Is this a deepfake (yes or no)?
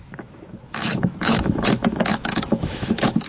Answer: yes